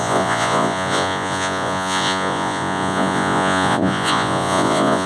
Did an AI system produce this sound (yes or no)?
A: yes